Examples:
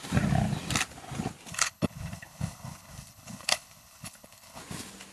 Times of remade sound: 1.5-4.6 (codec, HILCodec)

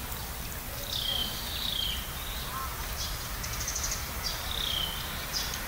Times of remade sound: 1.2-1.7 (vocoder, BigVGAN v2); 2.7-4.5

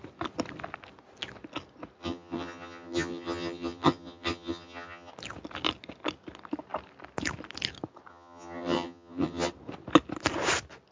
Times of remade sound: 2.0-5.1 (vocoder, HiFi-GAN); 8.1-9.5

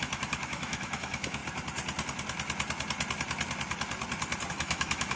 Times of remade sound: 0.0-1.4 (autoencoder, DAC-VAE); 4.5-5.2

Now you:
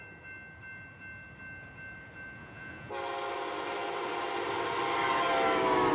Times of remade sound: 2.4-2.9 (vocoder, Vocos)